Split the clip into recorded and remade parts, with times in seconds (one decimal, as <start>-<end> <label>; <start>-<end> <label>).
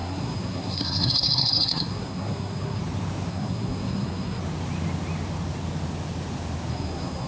0.0-2.8 remade; 2.8-3.3 recorded; 3.3-4.4 remade; 4.4-6.7 recorded; 6.7-7.3 remade